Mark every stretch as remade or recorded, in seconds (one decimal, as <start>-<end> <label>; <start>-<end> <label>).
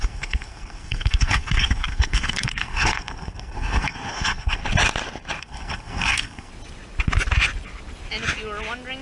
0.0-4.6 remade; 4.6-5.4 recorded; 5.4-6.5 remade; 6.5-9.0 recorded